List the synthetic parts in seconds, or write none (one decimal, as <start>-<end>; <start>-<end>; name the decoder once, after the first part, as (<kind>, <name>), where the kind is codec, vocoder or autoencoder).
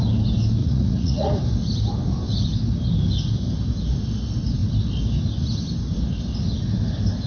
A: 0.6-1.3 (vocoder, Vocos)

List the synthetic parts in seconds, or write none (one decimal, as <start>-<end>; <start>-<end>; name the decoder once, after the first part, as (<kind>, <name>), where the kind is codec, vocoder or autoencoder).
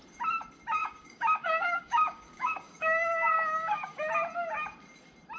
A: 0.8-4.0 (codec, DAC)